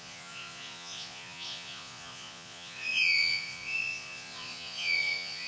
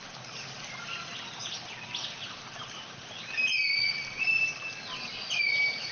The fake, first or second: first